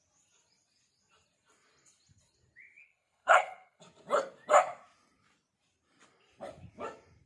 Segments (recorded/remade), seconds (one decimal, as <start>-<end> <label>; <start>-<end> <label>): 0.0-2.8 recorded; 2.8-3.8 remade; 3.8-7.3 recorded